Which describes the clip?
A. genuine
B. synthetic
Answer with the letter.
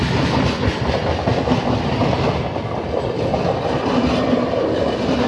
A